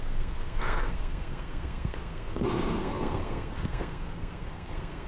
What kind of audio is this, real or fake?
fake